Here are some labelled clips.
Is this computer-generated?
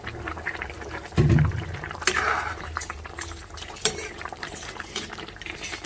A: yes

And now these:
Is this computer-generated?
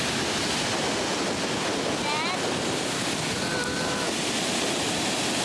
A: no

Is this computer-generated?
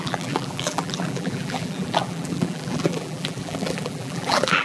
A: yes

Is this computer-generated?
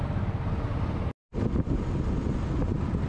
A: no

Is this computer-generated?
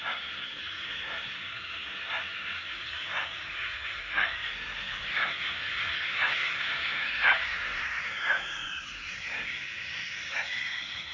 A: yes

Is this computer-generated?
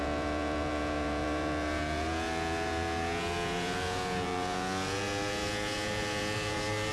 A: yes